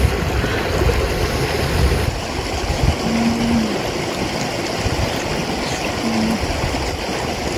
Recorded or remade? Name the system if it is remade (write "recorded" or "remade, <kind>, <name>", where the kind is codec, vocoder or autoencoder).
recorded